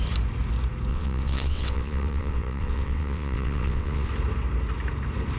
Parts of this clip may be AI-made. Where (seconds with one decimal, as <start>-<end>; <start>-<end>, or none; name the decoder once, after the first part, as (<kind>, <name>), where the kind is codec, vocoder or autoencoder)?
0.9-4.1 (vocoder, WaveNeXt)